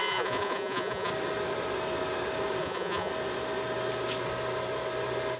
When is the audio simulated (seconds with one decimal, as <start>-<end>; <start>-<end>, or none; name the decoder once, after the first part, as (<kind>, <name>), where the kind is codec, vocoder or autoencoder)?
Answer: 0.0-1.1 (vocoder, Vocos); 2.6-3.1